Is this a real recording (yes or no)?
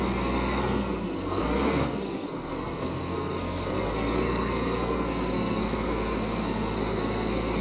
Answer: no